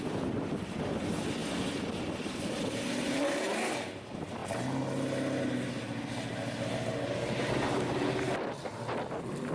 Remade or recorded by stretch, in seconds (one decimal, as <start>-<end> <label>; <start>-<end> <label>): 0.0-9.5 recorded